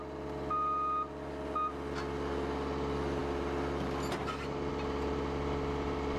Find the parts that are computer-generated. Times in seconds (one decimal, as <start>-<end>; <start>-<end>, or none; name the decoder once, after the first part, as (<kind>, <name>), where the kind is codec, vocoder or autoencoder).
none